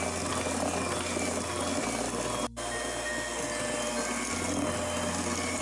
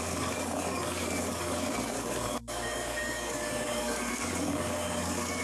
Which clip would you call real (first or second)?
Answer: first